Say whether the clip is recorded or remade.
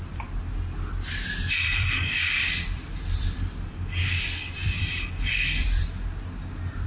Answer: remade